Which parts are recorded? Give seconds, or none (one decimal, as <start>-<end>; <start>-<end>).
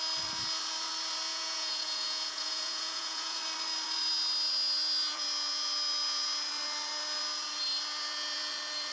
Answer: 0.0-1.3; 3.4-8.9